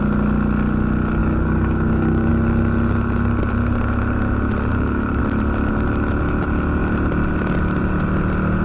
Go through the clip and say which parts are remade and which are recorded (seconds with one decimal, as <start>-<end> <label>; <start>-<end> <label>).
0.0-1.2 recorded; 1.2-2.3 remade; 2.3-4.7 recorded; 4.7-5.2 remade; 5.2-8.6 recorded